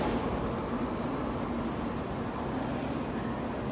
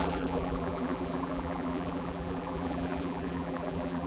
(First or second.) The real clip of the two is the first